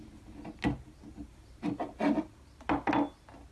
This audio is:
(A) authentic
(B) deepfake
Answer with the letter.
A